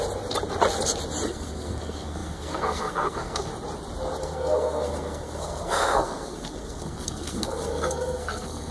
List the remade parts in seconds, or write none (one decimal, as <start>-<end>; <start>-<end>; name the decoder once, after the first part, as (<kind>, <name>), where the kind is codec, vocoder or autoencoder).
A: 1.3-3.5 (codec, SNAC); 4.2-8.7